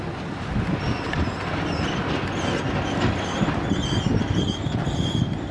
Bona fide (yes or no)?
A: yes